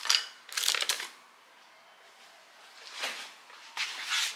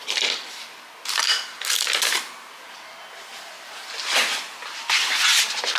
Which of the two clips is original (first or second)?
first